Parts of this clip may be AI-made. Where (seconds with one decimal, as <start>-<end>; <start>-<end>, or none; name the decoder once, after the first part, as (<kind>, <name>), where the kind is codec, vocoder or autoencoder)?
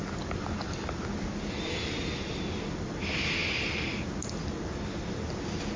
none